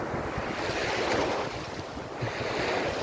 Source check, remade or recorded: recorded